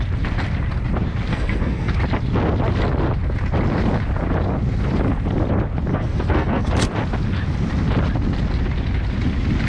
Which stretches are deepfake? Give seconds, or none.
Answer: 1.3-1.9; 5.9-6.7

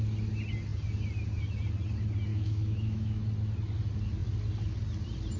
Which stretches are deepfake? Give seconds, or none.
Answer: 2.3-3.2

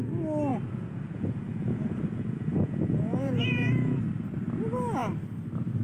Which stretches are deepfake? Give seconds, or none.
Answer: 0.5-4.0

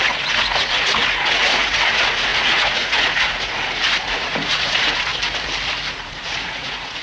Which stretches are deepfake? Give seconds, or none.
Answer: 0.0-5.1; 5.9-7.0